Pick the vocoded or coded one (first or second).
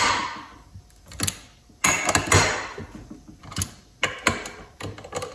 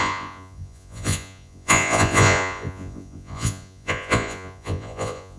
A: second